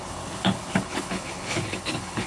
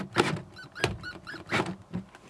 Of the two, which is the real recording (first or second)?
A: second